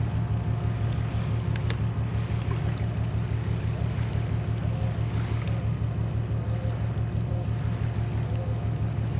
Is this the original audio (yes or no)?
yes